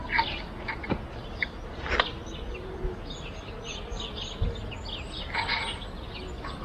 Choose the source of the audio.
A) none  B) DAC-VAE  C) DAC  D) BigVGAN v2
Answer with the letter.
A